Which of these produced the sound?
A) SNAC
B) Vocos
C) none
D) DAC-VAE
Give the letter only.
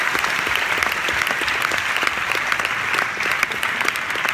C